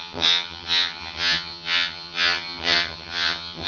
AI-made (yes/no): yes